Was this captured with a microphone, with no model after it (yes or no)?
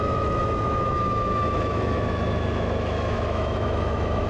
no